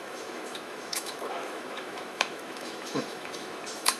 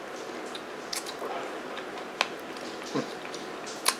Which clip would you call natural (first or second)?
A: second